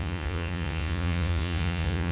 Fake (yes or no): yes